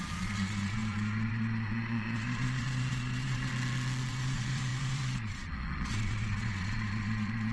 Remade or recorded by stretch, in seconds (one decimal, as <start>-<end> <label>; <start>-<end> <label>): 0.0-3.5 remade; 3.5-4.1 recorded; 4.1-7.5 remade